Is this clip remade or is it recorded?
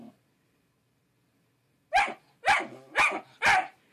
recorded